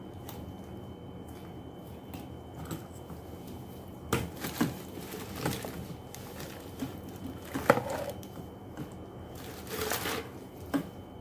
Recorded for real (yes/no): yes